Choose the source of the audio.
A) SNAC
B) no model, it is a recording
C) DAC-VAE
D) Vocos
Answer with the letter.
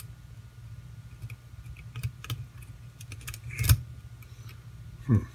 B